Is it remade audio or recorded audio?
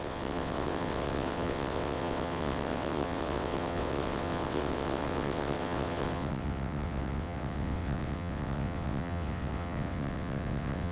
remade